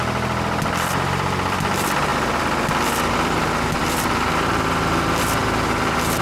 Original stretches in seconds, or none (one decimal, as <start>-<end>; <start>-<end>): 2.1-3.1